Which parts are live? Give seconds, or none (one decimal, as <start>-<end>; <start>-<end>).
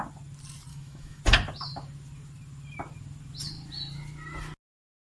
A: 0.0-0.7; 1.2-5.0